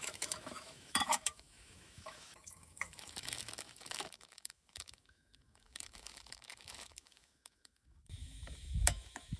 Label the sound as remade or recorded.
remade